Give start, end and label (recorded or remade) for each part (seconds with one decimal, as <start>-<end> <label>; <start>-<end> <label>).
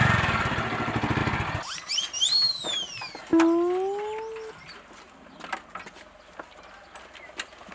0.0-7.7 recorded